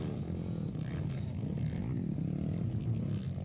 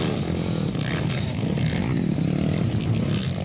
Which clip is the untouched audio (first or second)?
first